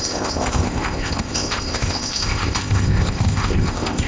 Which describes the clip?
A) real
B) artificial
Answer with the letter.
B